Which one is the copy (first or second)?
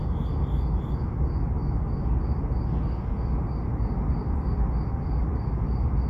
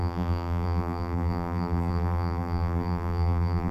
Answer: second